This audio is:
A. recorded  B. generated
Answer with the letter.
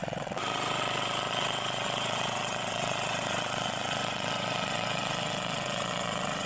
B